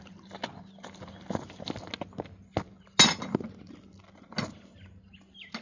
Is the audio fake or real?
real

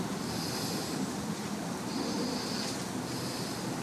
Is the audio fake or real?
real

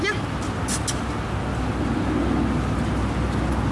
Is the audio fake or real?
real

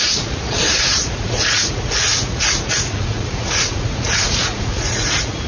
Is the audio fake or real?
fake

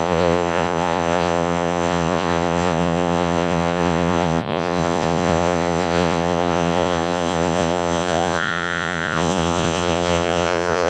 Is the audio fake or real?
fake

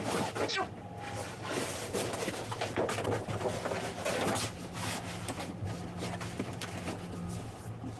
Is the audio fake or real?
real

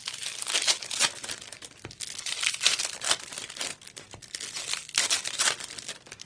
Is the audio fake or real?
real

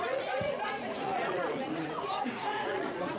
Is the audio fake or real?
fake